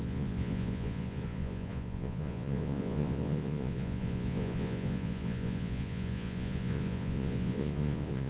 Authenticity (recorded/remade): remade